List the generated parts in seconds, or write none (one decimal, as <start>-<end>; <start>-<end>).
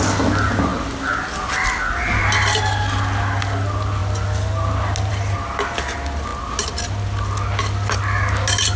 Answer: none